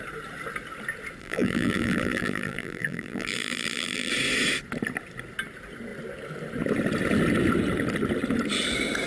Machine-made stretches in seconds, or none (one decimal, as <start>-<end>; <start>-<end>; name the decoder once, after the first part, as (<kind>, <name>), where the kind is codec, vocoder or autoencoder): 1.2-4.1 (vocoder, BigVGAN v2)